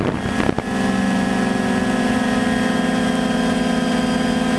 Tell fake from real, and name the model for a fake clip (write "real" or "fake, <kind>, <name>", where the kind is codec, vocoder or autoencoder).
real